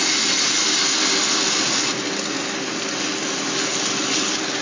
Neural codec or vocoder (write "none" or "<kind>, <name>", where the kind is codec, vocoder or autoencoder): none